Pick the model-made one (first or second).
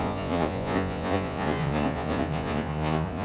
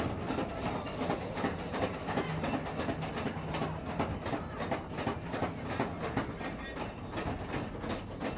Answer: first